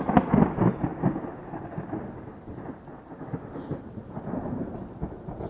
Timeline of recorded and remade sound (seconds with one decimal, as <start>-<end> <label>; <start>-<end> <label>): 0.0-5.5 recorded